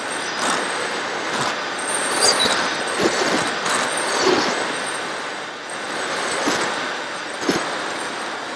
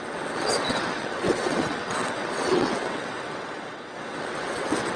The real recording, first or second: first